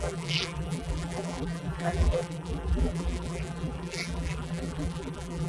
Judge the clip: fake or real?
fake